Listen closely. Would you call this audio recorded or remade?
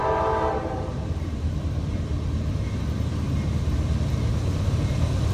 remade